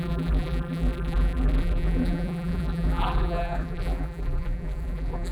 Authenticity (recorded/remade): remade